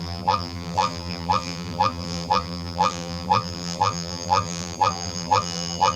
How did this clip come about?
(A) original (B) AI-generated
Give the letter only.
B